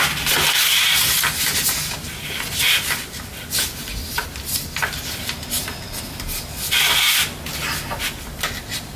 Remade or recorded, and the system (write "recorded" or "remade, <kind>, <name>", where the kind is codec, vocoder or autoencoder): recorded